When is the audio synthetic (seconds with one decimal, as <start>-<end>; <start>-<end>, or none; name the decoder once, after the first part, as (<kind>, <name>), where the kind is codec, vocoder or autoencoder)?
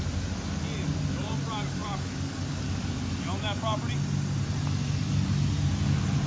none